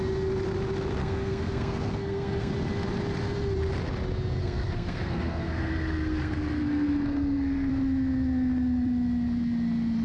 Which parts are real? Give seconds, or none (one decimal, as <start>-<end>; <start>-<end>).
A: 0.0-1.0; 2.5-4.4; 7.7-10.0